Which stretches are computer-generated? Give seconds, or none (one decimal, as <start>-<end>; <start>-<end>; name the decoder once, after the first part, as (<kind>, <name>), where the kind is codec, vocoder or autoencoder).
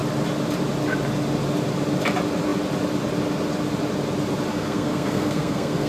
4.5-5.9 (codec, SNAC)